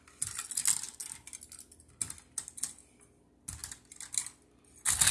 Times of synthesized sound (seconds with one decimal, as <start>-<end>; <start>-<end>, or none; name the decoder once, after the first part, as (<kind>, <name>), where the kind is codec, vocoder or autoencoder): none